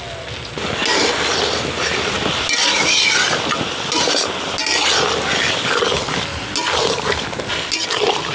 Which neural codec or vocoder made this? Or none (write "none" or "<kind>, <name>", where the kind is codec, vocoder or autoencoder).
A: none